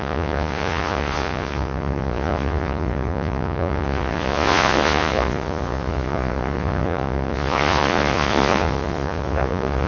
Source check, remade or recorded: remade